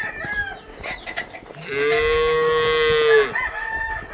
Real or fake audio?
real